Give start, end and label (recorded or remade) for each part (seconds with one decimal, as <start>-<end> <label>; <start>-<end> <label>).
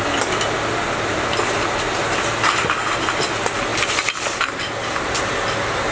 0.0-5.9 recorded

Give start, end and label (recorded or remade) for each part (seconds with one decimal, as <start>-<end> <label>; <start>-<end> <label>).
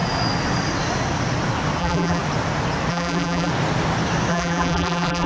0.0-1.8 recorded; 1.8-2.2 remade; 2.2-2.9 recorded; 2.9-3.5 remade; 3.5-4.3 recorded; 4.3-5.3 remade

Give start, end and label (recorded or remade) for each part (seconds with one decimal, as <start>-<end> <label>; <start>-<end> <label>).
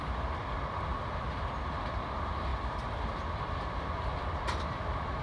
0.0-5.2 recorded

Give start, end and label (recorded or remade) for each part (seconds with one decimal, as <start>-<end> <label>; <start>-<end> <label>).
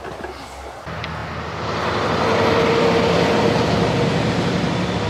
0.0-5.1 recorded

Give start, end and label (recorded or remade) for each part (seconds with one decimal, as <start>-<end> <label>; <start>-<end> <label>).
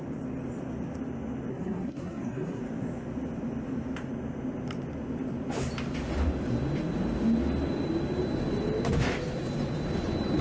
0.0-1.5 recorded; 1.5-2.6 remade; 2.6-10.4 recorded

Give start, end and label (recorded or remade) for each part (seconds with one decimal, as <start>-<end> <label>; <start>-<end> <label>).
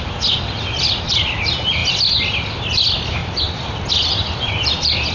0.0-5.1 recorded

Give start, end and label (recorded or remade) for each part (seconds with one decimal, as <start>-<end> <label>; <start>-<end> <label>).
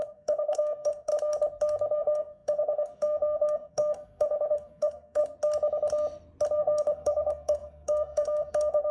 0.0-1.1 remade; 1.1-2.0 recorded; 2.0-5.2 remade; 5.2-6.6 recorded; 6.6-8.9 remade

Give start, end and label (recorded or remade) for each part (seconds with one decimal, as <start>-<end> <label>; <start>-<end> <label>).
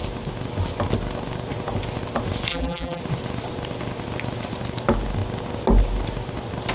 0.0-2.5 recorded; 2.5-3.0 remade; 3.0-6.7 recorded